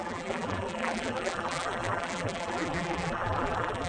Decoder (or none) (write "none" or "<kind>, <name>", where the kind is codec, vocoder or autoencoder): vocoder, BigVGAN v2